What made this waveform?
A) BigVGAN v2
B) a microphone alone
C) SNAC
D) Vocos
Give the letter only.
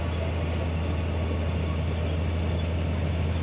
B